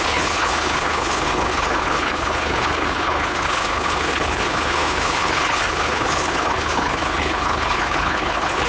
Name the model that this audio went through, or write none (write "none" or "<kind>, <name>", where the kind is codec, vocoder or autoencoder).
codec, HILCodec